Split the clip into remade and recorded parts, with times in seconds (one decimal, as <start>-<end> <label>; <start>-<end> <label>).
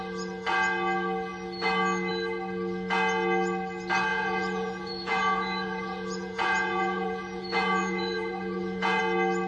0.0-4.1 recorded; 4.1-9.0 remade; 9.0-9.5 recorded